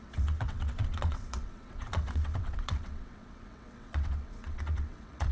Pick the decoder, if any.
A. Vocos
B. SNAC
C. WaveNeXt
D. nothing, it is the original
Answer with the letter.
C